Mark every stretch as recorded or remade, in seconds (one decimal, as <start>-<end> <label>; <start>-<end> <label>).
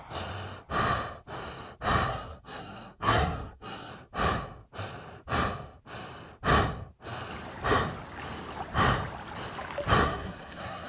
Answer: 0.0-2.1 recorded; 2.1-3.9 remade; 3.9-10.0 recorded; 10.0-10.9 remade